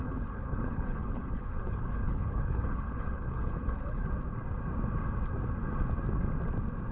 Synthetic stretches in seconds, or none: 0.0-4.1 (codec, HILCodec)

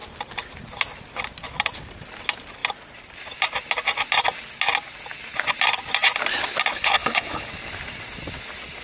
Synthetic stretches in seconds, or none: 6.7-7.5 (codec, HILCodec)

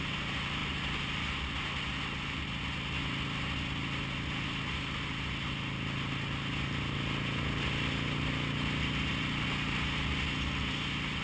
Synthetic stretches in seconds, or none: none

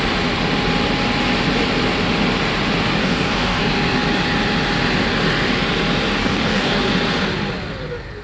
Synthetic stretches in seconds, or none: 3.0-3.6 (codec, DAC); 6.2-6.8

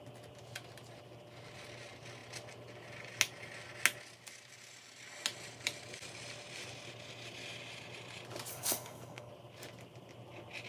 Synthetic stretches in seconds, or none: 8.5-9.3 (codec, SNAC)